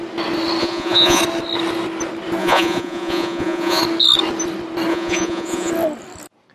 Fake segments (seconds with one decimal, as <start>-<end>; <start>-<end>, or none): 0.6-1.2; 2.4-3.8; 4.9-5.7